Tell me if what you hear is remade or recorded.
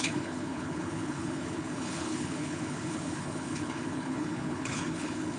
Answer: remade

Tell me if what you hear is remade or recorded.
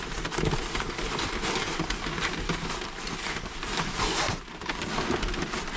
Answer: recorded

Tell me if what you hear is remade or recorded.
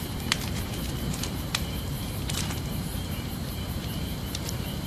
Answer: remade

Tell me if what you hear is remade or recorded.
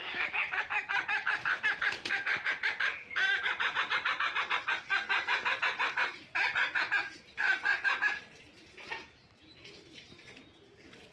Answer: recorded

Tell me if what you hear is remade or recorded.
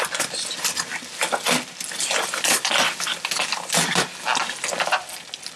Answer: recorded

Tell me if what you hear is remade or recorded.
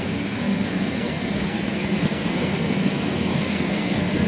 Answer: remade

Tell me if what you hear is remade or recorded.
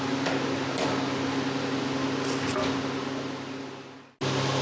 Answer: recorded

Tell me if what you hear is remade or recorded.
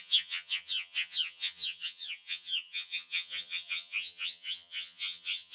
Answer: remade